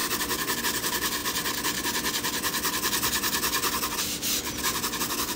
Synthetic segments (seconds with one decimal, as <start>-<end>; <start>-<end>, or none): none